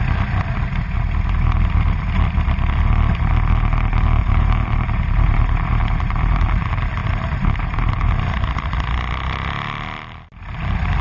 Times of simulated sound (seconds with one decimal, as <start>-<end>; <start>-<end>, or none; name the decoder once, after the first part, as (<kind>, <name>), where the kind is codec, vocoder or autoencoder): 4.2-6.6 (vocoder, BigVGAN v2); 7.0-8.1